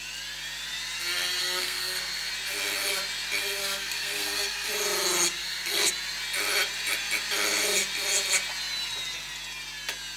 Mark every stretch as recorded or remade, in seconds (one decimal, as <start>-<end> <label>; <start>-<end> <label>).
0.0-1.4 recorded; 1.4-2.3 remade; 2.3-3.6 recorded; 3.6-4.7 remade; 4.7-5.4 recorded; 5.4-5.9 remade; 5.9-10.2 recorded